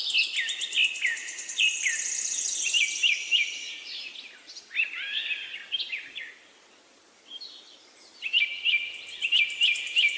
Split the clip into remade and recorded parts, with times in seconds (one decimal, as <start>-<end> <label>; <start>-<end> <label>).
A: 0.0-1.2 recorded; 1.2-1.7 remade; 1.7-10.2 recorded